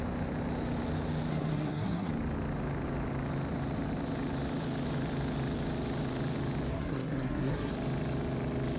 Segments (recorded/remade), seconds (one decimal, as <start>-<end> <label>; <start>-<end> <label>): 0.0-1.3 recorded; 1.3-2.1 remade; 2.1-6.7 recorded; 6.7-7.7 remade; 7.7-8.8 recorded